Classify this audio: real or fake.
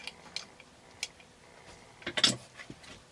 real